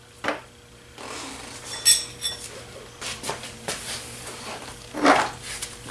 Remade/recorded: recorded